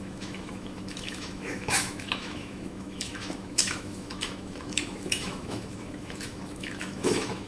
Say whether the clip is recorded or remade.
remade